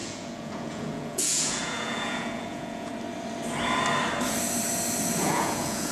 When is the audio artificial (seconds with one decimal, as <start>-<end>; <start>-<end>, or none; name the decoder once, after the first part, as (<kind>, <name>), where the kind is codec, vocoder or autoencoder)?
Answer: 0.0-2.9 (vocoder, Vocos); 5.2-5.9